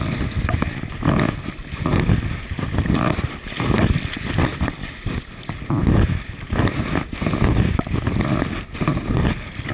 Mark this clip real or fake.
real